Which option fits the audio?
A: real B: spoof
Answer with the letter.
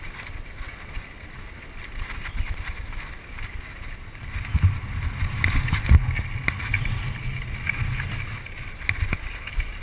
A